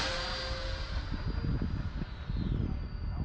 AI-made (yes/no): no